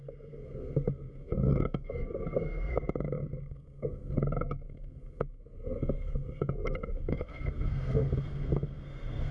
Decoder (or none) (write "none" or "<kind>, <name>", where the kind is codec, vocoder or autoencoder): codec, SNAC